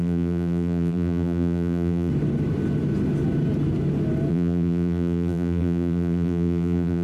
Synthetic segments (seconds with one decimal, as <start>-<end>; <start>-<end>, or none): 0.0-2.1; 4.3-7.0